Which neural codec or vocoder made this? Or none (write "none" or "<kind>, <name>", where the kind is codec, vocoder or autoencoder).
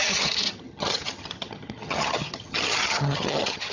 vocoder, HiFi-GAN